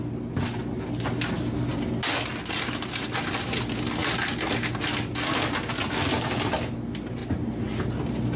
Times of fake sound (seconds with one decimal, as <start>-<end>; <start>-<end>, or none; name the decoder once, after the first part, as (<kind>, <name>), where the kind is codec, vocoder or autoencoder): none